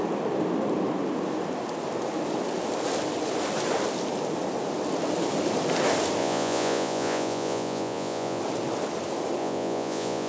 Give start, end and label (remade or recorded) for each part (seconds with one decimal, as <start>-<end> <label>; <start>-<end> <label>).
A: 0.0-6.2 recorded; 6.2-8.4 remade; 8.4-9.4 recorded; 9.4-10.3 remade